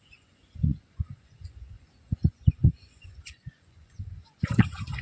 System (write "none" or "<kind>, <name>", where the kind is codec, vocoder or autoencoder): vocoder, Vocos